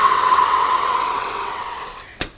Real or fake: fake